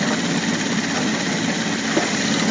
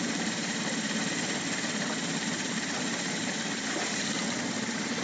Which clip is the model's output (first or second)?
second